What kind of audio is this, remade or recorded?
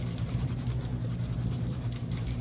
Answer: remade